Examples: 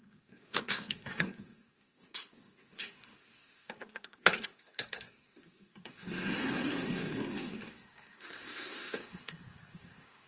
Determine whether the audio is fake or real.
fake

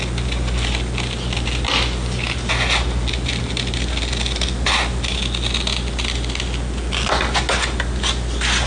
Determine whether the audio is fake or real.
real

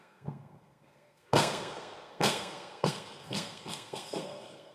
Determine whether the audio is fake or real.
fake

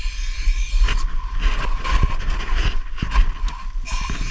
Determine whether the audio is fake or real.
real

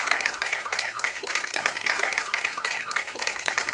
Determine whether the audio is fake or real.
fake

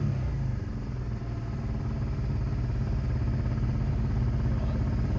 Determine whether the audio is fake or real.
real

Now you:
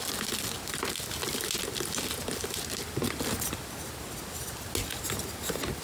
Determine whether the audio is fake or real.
real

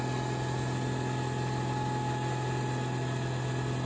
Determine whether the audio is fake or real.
real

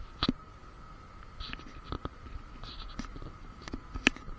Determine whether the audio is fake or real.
real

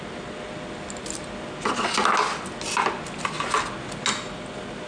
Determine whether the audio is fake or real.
real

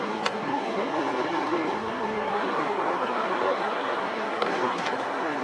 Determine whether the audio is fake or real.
fake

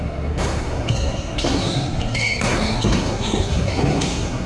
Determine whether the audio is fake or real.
fake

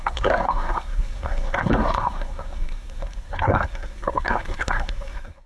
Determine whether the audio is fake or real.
fake